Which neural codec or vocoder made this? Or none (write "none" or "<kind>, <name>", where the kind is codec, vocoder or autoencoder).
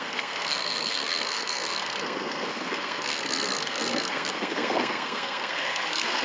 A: codec, SNAC